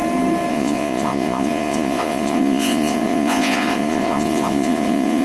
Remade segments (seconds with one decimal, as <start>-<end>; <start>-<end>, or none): 0.5-5.2